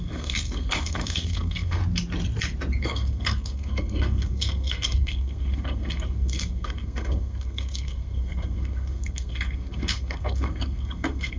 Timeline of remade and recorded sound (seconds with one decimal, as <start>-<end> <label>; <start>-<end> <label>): 0.0-1.8 remade; 1.8-2.8 recorded; 2.8-11.4 remade